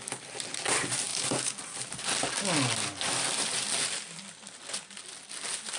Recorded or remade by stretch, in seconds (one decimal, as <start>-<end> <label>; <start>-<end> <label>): 0.0-5.8 recorded